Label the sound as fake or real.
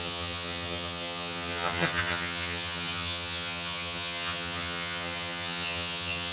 fake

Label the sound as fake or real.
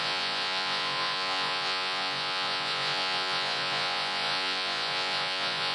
fake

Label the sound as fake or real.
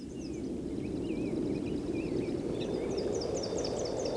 real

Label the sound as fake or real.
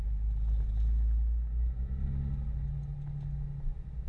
real